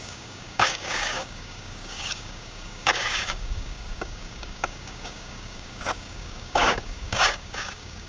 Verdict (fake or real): fake